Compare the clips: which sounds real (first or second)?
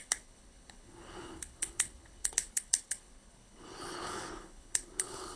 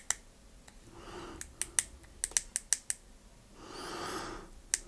second